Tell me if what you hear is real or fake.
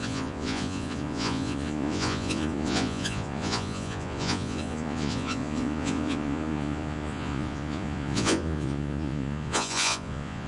fake